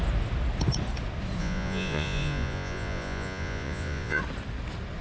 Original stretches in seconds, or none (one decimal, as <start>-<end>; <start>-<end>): 0.0-1.4; 4.2-5.0